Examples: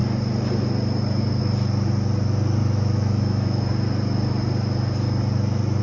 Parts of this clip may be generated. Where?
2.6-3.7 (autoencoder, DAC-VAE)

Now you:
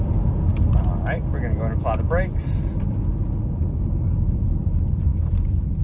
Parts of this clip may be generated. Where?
none